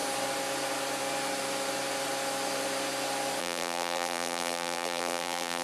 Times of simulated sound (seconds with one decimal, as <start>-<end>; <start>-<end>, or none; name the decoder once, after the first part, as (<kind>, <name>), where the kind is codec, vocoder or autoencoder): 3.4-5.6 (vocoder, BigVGAN v2)